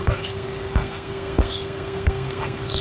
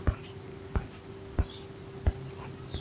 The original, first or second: second